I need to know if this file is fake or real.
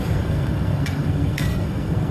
fake